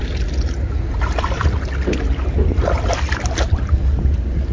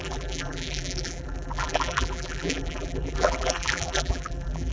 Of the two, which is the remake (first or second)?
second